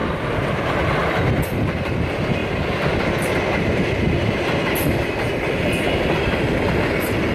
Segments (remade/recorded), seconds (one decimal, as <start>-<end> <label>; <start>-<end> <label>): 0.0-7.3 recorded